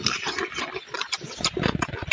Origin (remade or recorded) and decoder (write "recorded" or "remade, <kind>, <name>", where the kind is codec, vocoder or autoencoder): recorded